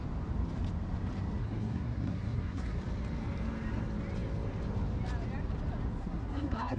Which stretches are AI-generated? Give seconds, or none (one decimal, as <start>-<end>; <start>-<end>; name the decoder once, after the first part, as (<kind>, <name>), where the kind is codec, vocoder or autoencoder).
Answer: 1.4-2.8 (codec, SNAC); 6.0-6.8